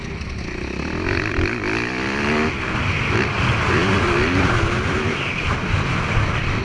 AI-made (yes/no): no